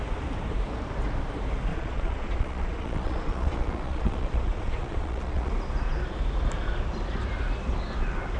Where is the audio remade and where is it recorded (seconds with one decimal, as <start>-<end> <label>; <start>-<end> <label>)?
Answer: 0.0-1.7 recorded; 1.7-5.5 remade; 5.5-8.4 recorded